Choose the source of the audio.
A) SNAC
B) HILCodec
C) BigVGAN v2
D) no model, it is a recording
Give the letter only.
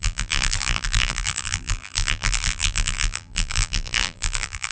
C